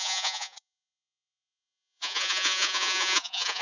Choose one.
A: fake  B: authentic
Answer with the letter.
A